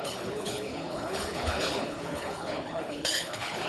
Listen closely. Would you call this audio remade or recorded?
remade